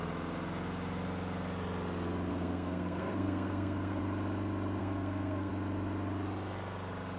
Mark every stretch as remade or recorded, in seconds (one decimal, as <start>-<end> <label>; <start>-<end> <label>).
0.0-2.3 recorded; 2.3-4.0 remade; 4.0-4.8 recorded; 4.8-5.5 remade; 5.5-7.2 recorded